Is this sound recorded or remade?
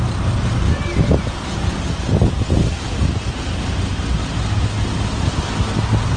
recorded